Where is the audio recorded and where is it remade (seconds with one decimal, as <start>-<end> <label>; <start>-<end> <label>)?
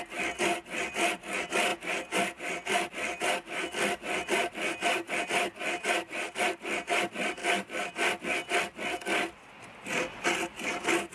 0.0-11.1 recorded